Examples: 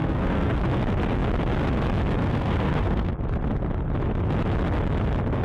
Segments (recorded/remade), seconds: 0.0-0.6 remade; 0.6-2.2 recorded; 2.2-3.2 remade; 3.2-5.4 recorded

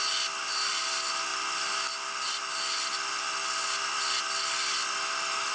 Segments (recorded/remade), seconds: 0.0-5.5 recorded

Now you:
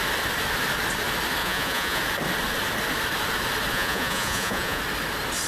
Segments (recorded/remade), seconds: 0.0-1.4 recorded; 1.4-2.0 remade; 2.0-3.7 recorded; 3.7-4.8 remade; 4.8-5.5 recorded